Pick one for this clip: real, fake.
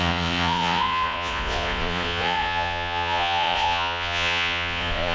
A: fake